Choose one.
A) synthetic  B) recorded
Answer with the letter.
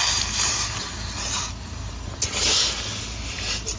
B